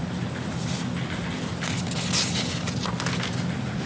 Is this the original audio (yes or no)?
yes